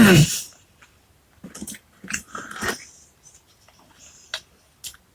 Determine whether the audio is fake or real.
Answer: real